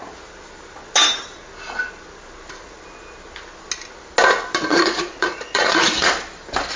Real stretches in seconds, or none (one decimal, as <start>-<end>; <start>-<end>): 0.0-4.7; 6.1-6.8